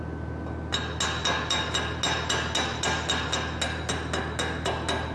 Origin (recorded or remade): recorded